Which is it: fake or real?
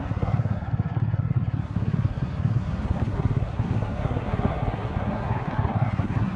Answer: fake